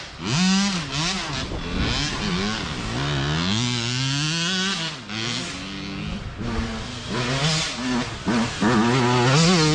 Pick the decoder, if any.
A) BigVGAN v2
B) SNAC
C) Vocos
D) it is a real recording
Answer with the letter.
D